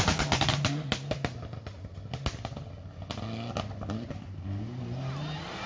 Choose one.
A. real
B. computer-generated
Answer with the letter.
A